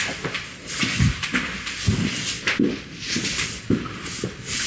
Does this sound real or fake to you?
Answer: real